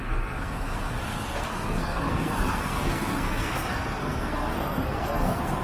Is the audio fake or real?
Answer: fake